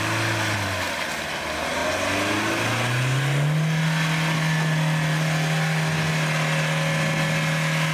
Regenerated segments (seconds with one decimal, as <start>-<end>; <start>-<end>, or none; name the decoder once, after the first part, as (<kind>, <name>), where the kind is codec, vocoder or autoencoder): none